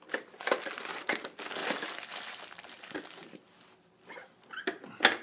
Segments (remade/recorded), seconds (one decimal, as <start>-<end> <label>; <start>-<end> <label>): 0.0-1.6 recorded; 1.6-2.4 remade; 2.4-5.2 recorded

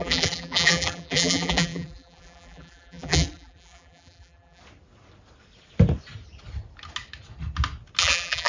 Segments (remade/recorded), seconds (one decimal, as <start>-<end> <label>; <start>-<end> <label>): 0.0-4.6 remade; 4.6-8.0 recorded; 8.0-8.5 remade

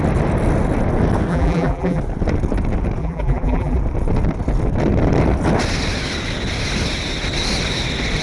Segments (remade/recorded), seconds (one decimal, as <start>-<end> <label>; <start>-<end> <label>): 0.0-1.3 recorded; 1.3-2.0 remade; 2.0-3.0 recorded; 3.0-3.8 remade; 3.8-8.2 recorded

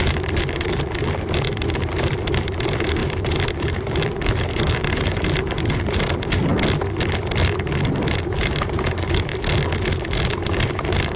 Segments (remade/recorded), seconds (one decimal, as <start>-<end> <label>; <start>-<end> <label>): 0.0-6.5 remade; 6.5-7.9 recorded; 7.9-9.3 remade; 9.3-10.0 recorded; 10.0-11.2 remade

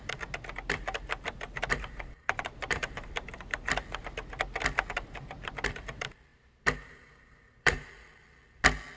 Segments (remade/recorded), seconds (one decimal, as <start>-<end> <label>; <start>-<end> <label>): 0.0-1.7 recorded; 1.7-3.7 remade; 3.7-6.3 recorded; 6.3-7.9 remade; 7.9-9.0 recorded